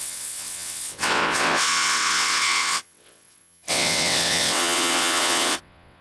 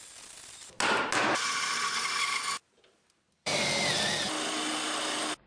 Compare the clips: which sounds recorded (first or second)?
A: second